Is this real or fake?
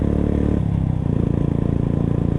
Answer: real